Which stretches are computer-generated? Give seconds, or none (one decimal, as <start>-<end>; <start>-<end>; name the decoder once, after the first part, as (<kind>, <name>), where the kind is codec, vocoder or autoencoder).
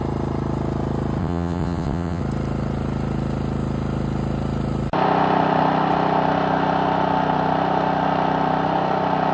1.2-2.2 (vocoder, WaveNeXt)